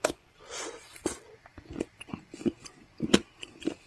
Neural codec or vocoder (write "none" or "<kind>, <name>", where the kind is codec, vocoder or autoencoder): vocoder, Vocos